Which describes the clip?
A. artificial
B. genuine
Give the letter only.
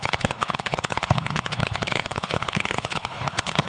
A